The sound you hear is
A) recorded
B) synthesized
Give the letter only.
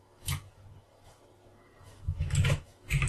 B